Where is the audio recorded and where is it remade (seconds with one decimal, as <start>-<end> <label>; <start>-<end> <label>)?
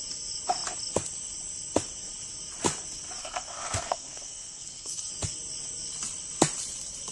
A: 0.0-3.2 recorded; 3.2-5.1 remade; 5.1-7.1 recorded